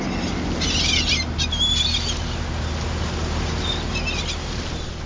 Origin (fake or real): real